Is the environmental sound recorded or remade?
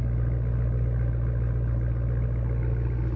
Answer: recorded